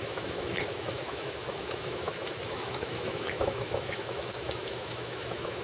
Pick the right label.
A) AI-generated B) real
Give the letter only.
A